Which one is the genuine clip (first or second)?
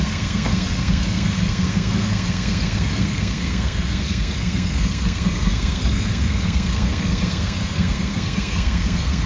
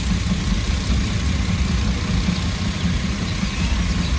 second